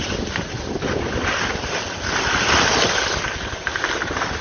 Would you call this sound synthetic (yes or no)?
no